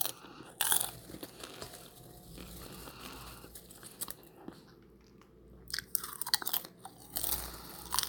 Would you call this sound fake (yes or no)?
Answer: no